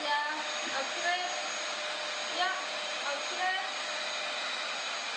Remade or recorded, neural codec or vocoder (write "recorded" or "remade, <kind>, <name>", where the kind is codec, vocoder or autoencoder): recorded